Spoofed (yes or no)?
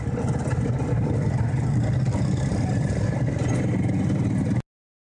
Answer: no